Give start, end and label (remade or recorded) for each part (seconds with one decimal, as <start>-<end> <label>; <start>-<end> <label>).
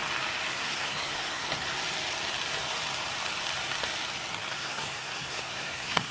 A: 0.0-0.5 recorded; 0.5-1.4 remade; 1.4-4.5 recorded; 4.5-6.1 remade